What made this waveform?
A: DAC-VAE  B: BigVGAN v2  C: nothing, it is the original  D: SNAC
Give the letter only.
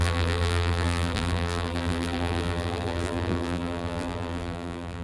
B